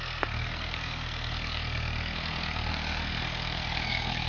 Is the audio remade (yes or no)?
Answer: yes